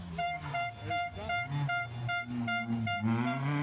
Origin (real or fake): real